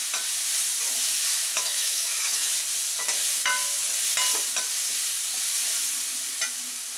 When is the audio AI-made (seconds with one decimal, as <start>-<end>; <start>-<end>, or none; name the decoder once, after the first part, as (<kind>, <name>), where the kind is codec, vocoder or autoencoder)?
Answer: 1.4-2.5 (autoencoder, DAC-VAE)

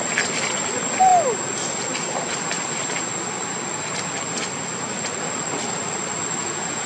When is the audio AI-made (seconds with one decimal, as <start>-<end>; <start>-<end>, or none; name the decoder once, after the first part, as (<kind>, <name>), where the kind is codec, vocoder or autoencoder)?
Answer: 6.4-6.9 (vocoder, Vocos)

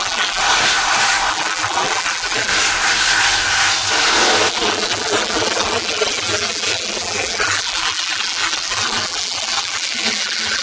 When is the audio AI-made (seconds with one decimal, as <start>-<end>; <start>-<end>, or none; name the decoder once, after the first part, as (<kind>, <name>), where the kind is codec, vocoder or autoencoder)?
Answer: 0.0-0.4 (vocoder, BigVGAN v2); 1.3-2.5; 4.5-10.6

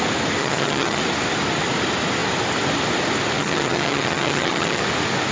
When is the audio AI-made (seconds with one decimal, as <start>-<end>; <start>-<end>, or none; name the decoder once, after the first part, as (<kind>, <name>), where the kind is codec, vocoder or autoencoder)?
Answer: 0.4-1.0 (vocoder, HiFi-GAN); 3.4-4.8

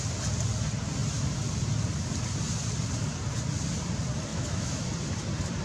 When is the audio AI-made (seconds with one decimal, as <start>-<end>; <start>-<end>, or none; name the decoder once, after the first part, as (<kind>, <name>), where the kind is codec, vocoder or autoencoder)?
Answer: 4.3-4.8 (autoencoder, DAC-VAE)